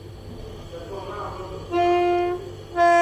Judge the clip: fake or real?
real